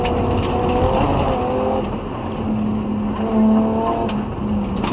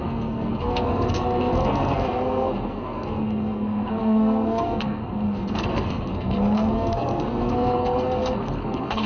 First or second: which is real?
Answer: first